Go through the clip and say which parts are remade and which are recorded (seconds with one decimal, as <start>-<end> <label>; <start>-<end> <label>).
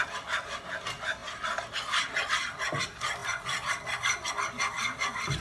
0.0-5.4 recorded